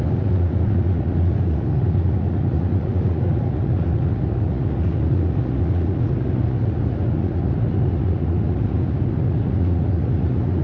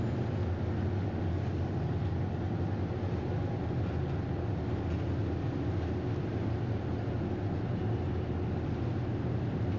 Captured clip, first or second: second